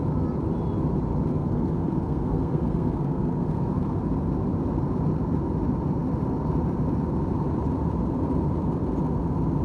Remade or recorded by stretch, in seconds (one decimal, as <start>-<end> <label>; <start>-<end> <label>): 0.0-1.3 recorded; 1.3-4.0 remade; 4.0-9.6 recorded